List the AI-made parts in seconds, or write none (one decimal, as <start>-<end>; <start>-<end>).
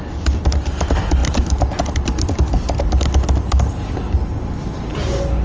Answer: none